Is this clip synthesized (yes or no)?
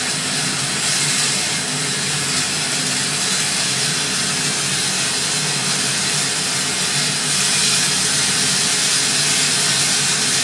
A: no